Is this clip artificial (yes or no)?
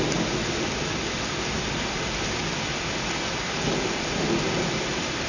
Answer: no